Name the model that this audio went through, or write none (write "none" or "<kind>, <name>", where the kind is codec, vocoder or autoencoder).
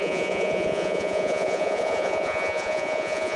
vocoder, Vocos